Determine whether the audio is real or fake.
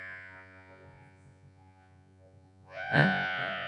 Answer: fake